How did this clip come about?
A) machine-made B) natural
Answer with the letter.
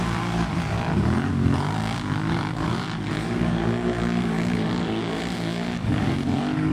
A